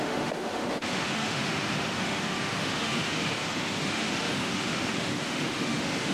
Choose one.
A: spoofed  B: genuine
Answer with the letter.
A